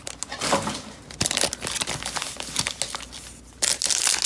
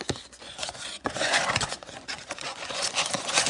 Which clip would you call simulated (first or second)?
second